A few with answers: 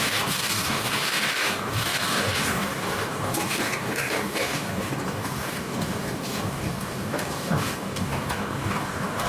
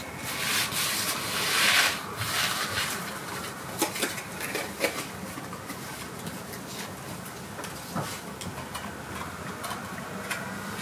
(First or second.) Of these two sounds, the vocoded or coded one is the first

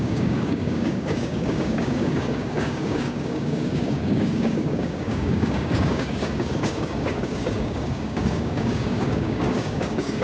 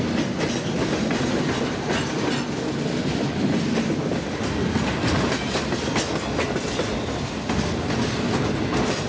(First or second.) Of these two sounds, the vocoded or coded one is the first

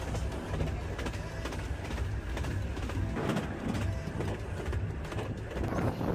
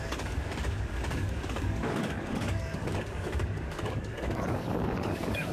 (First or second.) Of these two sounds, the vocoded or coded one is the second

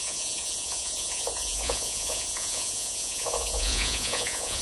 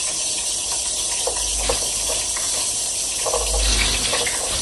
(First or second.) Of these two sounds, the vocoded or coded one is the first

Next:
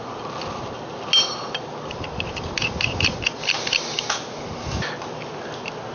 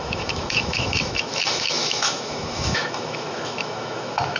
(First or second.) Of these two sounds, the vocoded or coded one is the second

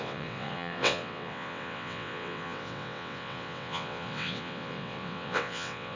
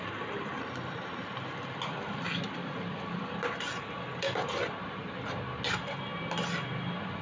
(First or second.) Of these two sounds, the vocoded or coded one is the first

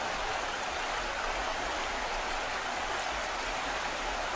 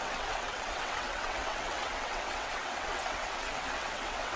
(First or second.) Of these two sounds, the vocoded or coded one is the second